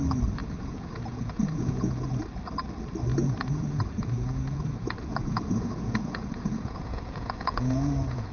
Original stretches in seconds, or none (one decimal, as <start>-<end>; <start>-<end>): 0.0-0.4; 2.1-3.1